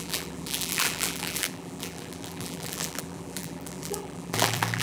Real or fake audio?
fake